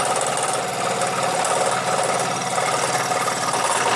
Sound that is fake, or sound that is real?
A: real